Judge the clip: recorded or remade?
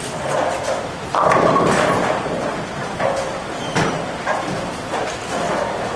remade